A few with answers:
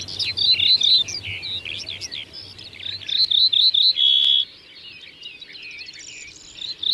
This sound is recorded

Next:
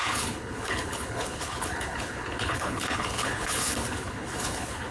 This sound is remade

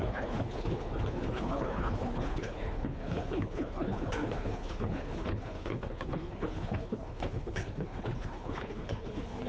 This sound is remade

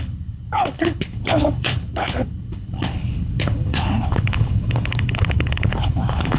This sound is remade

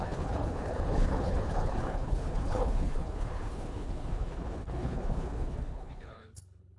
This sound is remade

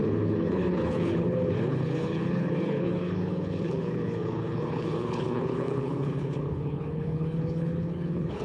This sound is remade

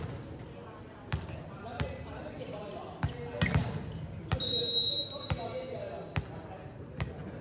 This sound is recorded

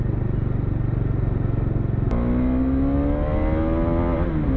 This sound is recorded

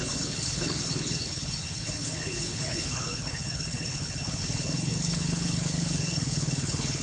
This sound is remade